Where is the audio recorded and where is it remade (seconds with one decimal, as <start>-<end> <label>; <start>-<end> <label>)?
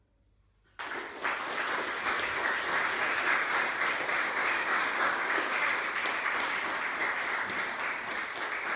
0.0-4.4 recorded; 4.4-5.7 remade; 5.7-8.8 recorded